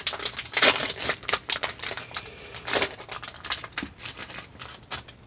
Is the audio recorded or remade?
recorded